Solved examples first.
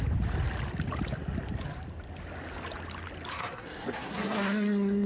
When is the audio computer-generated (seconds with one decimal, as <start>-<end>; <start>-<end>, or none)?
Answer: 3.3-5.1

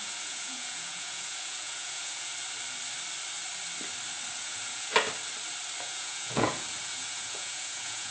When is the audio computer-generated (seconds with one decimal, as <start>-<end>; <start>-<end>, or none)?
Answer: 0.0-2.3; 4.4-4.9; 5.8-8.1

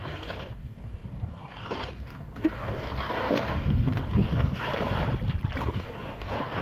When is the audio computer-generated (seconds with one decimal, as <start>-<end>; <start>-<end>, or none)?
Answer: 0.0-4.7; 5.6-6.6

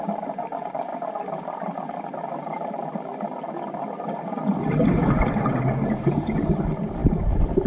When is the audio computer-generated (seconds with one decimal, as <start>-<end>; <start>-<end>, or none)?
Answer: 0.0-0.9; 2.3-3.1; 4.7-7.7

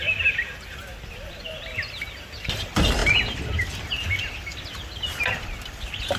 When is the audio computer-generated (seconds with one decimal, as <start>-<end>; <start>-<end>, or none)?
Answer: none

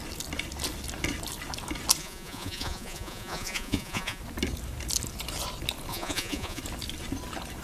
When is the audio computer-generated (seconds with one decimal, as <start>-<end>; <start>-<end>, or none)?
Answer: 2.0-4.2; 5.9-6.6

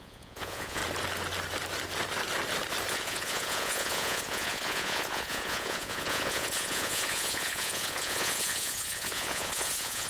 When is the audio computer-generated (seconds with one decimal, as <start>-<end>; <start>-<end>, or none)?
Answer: 0.0-0.8; 2.9-10.1

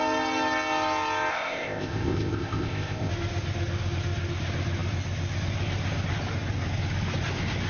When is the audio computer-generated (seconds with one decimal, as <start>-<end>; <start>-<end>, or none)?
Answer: 1.3-3.1